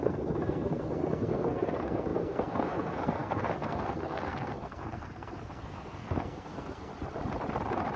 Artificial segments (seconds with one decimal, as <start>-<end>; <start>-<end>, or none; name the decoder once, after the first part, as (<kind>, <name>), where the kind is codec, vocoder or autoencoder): 0.0-6.9 (codec, SNAC)